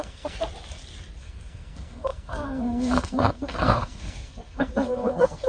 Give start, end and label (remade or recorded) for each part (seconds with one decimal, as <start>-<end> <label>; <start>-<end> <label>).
0.0-0.4 remade; 0.4-1.2 recorded; 1.2-5.5 remade

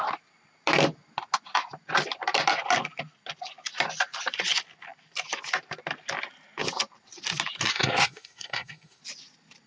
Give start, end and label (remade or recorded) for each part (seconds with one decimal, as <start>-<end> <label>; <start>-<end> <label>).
0.0-7.7 recorded; 7.7-9.0 remade; 9.0-9.7 recorded

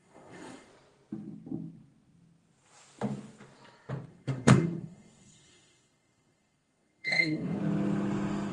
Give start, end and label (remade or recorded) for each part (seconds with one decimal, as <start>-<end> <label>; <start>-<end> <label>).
0.0-0.7 remade; 0.7-4.1 recorded; 4.1-7.6 remade; 7.6-8.5 recorded